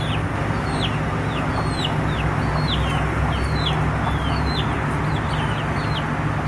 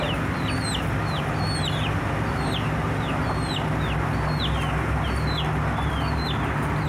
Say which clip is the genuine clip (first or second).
first